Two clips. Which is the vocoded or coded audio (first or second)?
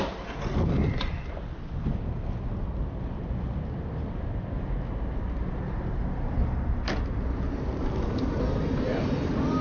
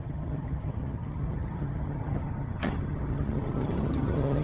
second